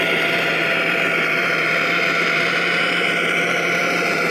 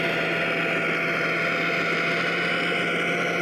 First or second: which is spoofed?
first